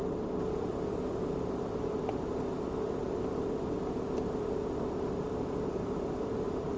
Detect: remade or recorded remade